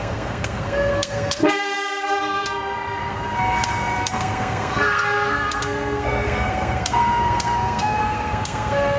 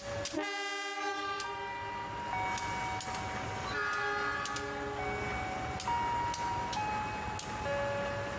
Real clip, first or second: second